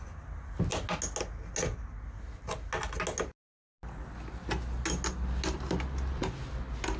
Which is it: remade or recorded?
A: recorded